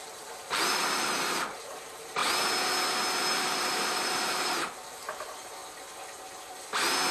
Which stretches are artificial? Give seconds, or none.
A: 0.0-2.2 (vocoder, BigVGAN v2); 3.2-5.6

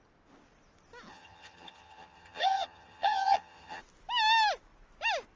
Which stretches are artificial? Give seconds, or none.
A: 1.1-3.8 (vocoder, HiFi-GAN)

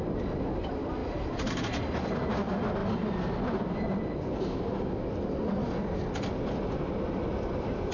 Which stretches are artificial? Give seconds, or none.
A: none

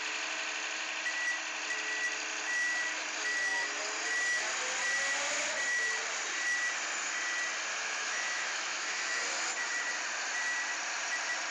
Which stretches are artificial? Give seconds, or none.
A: 7.7-9.2 (autoencoder, DAC-VAE)

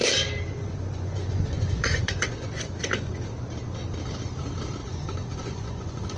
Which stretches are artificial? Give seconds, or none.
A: 0.5-3.3 (vocoder, Vocos); 4.8-6.2

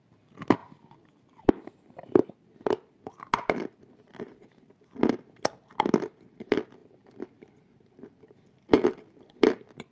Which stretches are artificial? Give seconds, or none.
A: none

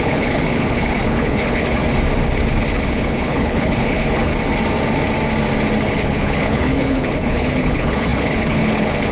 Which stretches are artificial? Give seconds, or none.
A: 0.0-1.8 (codec, HILCodec); 2.9-4.3; 5.8-9.1